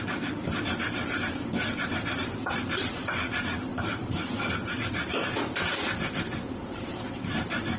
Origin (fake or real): fake